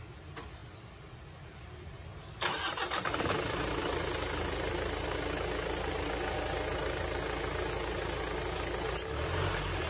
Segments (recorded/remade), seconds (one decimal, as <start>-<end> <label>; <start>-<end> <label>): 0.0-9.9 recorded